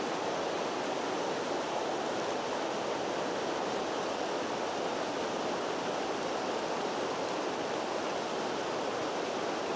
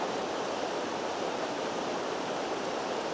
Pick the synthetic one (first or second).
second